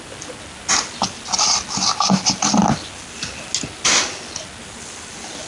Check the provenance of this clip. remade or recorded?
recorded